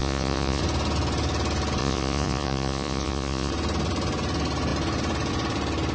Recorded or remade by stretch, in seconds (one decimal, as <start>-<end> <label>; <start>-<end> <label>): 0.0-0.6 remade; 0.6-1.8 recorded; 1.8-3.5 remade; 3.5-5.9 recorded